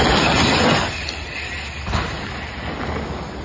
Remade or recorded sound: recorded